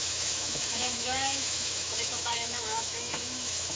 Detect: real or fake fake